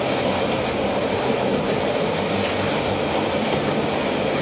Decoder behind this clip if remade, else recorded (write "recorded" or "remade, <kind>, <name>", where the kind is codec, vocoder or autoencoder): recorded